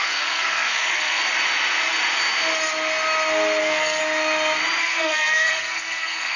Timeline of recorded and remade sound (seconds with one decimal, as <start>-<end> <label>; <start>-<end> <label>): 0.0-1.2 remade; 1.2-3.6 recorded; 3.6-4.0 remade; 4.0-4.8 recorded; 4.8-6.4 remade